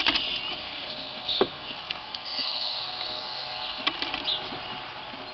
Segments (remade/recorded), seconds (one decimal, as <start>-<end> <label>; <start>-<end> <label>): 0.0-0.6 recorded; 0.6-3.8 remade; 3.8-5.3 recorded